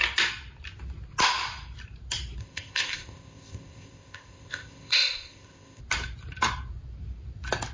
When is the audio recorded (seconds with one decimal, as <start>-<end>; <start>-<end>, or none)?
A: 0.0-2.4; 5.8-7.7